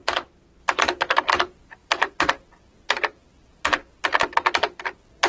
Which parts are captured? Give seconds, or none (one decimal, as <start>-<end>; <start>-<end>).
0.0-5.3